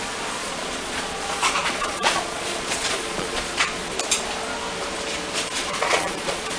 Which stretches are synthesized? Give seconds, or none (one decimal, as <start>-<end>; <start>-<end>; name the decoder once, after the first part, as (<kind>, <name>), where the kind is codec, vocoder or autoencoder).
0.4-3.9 (vocoder, Vocos); 5.6-6.6